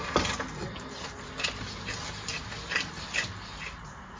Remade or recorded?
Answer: recorded